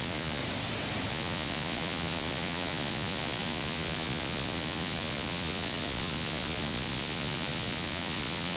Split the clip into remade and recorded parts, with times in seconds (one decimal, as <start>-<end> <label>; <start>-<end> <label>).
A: 0.0-0.4 remade; 0.4-1.1 recorded; 1.1-8.6 remade